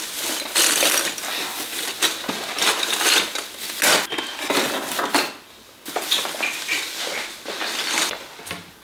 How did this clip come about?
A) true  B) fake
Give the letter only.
A